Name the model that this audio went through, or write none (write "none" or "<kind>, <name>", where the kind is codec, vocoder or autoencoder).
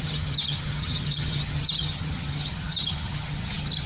vocoder, HiFi-GAN